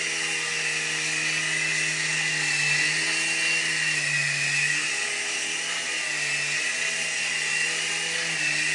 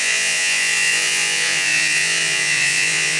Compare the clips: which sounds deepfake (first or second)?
second